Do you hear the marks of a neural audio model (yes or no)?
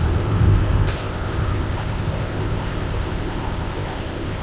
yes